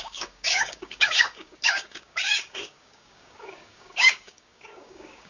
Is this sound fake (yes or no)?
yes